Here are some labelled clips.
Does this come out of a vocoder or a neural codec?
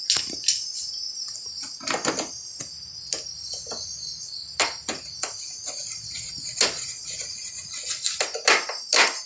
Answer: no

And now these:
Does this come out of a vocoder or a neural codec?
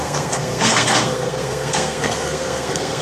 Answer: yes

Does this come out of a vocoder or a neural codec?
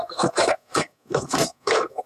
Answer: yes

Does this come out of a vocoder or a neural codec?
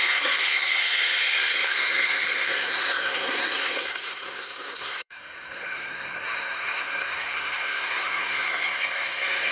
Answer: yes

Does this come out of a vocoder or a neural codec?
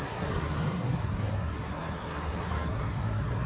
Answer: yes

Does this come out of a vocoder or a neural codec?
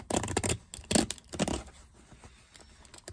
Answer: no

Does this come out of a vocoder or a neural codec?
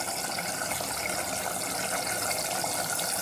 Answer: no